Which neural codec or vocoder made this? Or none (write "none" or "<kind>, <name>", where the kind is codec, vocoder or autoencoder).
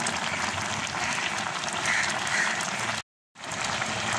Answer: none